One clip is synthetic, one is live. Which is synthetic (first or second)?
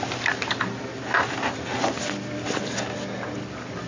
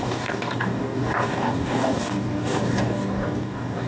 second